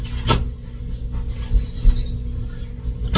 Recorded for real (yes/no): yes